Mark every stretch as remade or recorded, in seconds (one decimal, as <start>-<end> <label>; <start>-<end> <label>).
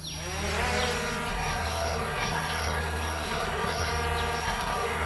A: 0.0-1.3 recorded; 1.3-3.9 remade; 3.9-4.4 recorded; 4.4-5.1 remade